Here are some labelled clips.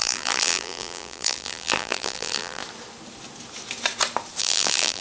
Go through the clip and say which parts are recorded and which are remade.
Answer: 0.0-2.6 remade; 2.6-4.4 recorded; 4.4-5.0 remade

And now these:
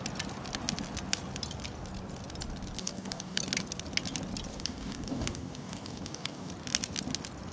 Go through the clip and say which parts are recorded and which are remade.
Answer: 0.0-2.8 recorded; 2.8-3.4 remade; 3.4-4.5 recorded; 4.5-6.5 remade; 6.5-7.5 recorded

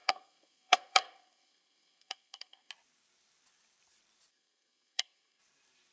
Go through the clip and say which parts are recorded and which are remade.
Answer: 0.0-2.7 remade; 2.7-4.3 recorded; 4.3-5.4 remade; 5.4-5.9 recorded

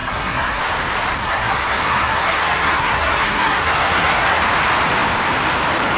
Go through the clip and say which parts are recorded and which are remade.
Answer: 0.0-0.6 remade; 0.6-1.2 recorded; 1.2-4.4 remade; 4.4-6.0 recorded

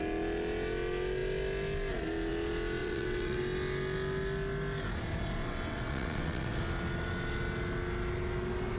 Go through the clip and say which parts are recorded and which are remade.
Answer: 0.0-2.8 recorded; 2.8-3.4 remade; 3.4-5.4 recorded; 5.4-6.6 remade; 6.6-8.8 recorded

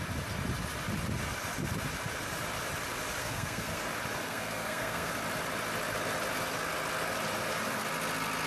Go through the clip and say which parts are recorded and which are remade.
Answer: 0.0-3.2 recorded; 3.2-3.8 remade; 3.8-4.2 recorded; 4.2-5.1 remade; 5.1-8.5 recorded

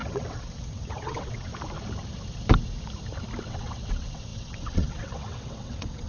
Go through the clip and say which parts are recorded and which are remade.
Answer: 0.0-1.5 remade; 1.5-3.4 recorded; 3.4-6.1 remade